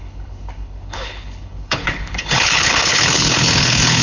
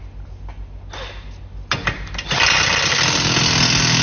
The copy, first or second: first